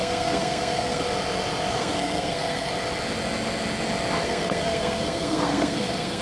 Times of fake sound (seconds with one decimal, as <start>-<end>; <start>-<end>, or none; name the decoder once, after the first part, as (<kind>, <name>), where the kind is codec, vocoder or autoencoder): 0.0-1.0 (codec, SNAC); 1.7-2.7; 4.2-6.2